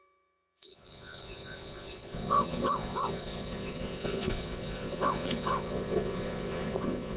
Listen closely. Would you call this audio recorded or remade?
remade